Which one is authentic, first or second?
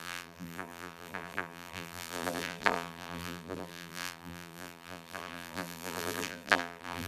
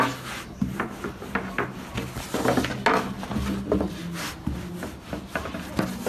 second